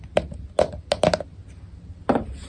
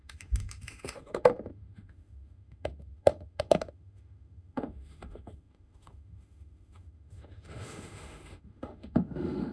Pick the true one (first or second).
first